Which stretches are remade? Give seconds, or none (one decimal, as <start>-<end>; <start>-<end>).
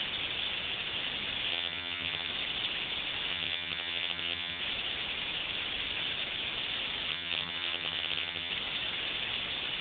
1.5-2.3; 3.3-4.6; 7.1-8.5